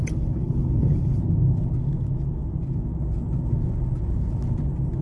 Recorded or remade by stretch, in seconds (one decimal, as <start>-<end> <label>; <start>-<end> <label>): 0.0-1.2 remade; 1.2-5.0 recorded